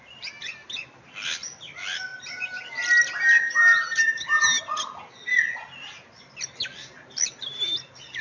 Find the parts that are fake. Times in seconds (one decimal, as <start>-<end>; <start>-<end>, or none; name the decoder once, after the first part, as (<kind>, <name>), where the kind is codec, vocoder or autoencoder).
2.1-2.6 (vocoder, BigVGAN v2)